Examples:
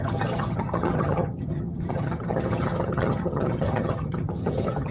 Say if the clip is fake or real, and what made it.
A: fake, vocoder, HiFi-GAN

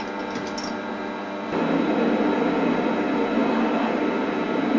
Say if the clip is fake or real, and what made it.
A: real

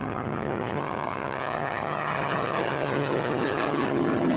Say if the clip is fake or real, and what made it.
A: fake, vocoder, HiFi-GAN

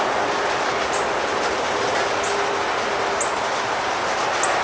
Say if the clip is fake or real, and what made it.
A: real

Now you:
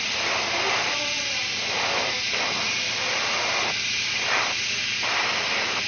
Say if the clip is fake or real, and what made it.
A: real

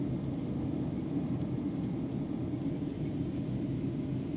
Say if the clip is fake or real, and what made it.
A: real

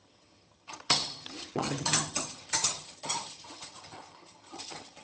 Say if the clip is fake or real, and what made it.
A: fake, vocoder, HiFi-GAN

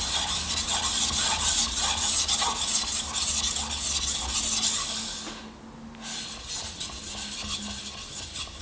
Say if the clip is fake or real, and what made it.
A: real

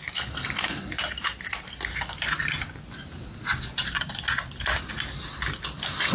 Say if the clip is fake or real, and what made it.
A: real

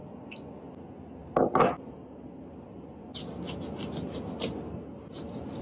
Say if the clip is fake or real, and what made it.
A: real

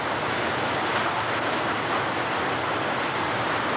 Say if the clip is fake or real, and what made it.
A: real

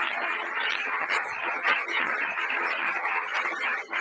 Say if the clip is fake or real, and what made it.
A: fake, vocoder, HiFi-GAN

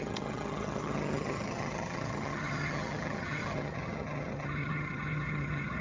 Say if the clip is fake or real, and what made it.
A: fake, vocoder, HiFi-GAN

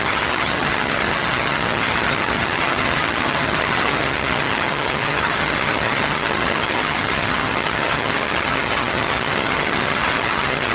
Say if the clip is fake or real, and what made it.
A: fake, vocoder, HiFi-GAN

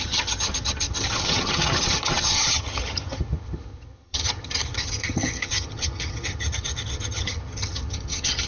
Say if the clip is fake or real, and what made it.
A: fake, vocoder, HiFi-GAN